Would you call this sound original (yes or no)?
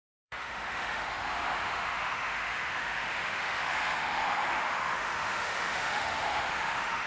no